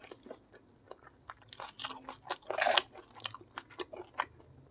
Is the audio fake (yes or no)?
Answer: no